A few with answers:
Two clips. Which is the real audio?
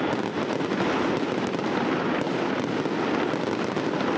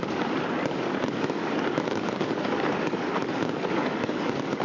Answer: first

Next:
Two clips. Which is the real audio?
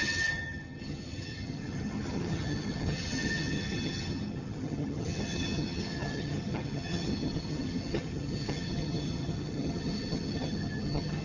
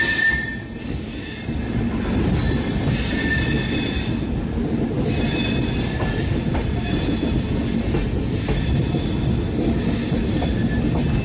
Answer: second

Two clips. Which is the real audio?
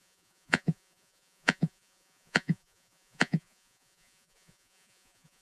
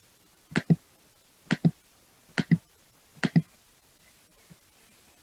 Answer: second